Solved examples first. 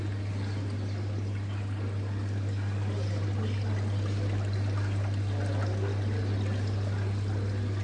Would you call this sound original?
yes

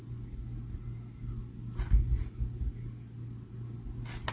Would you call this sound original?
yes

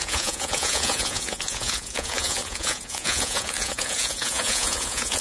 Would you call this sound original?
no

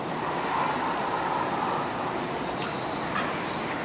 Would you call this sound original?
yes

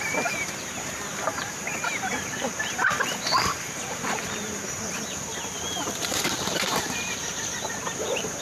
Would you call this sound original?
no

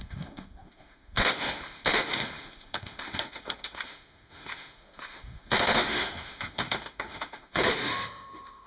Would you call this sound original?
no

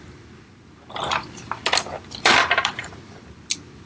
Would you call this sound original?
no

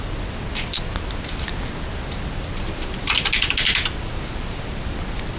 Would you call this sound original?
yes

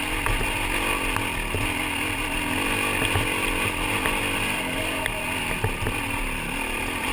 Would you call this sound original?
yes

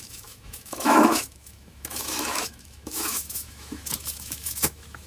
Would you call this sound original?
no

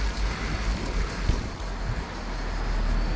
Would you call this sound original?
yes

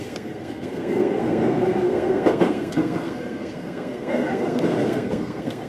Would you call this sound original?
no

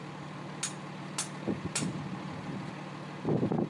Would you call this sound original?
yes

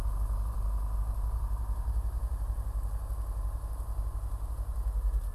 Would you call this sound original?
no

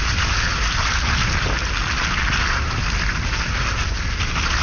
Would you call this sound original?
yes